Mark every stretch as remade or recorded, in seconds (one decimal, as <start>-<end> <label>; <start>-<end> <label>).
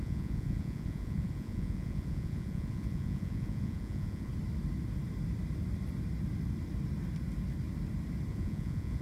0.0-4.3 remade; 4.3-8.3 recorded; 8.3-9.0 remade